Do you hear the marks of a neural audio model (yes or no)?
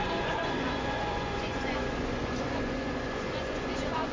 yes